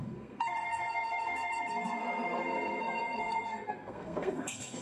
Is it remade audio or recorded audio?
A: remade